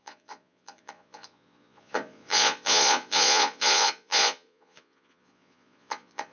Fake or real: fake